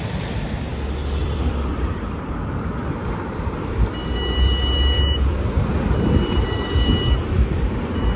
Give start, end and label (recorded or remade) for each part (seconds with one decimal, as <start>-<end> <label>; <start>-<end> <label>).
0.0-0.7 remade; 0.7-1.2 recorded; 1.2-8.2 remade